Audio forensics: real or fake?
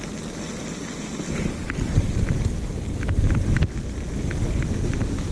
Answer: real